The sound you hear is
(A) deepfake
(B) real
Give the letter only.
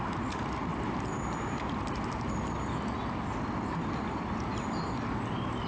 B